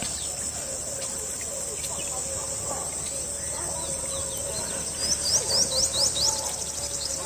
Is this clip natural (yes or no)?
yes